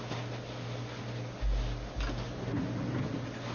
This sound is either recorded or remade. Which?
recorded